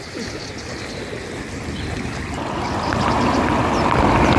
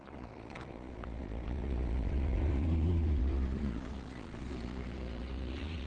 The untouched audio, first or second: first